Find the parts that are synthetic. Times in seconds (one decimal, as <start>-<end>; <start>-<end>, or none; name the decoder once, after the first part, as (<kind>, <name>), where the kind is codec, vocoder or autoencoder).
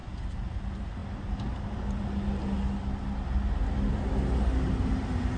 none